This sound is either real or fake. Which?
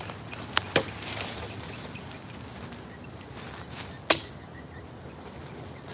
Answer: real